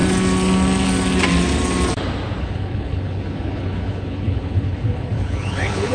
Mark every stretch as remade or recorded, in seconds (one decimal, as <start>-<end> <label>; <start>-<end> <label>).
0.0-2.4 recorded; 2.4-5.9 remade